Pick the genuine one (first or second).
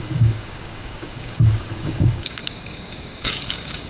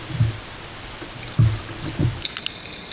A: second